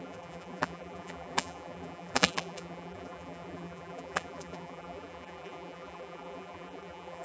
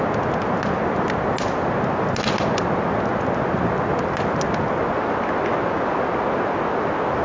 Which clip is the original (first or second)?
second